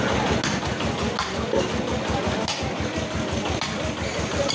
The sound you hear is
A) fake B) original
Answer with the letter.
B